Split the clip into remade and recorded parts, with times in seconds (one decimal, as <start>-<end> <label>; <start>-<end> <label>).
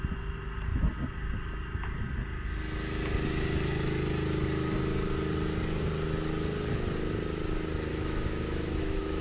0.0-7.9 recorded; 7.9-9.2 remade